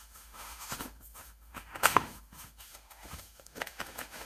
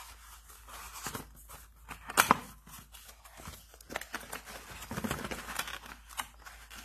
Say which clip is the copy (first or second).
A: first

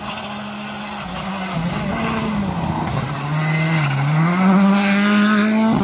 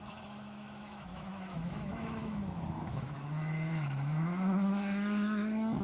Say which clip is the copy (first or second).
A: second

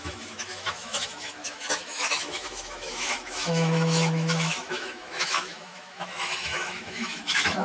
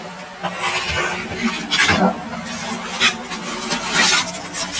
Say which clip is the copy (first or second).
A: first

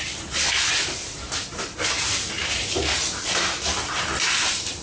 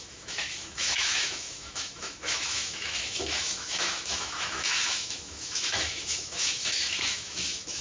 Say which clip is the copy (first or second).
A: second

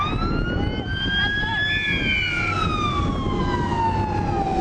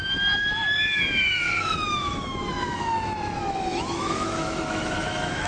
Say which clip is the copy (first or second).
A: second